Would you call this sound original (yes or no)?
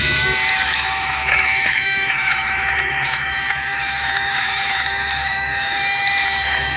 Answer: no